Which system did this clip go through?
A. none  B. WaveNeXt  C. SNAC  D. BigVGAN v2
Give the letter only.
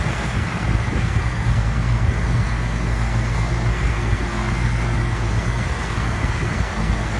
C